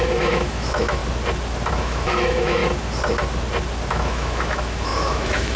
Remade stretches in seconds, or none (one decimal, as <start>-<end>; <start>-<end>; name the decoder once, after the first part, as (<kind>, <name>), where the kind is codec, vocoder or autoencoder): 0.0-1.0 (autoencoder, DAC-VAE); 1.7-2.6; 3.9-5.6